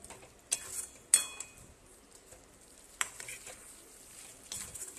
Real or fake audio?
real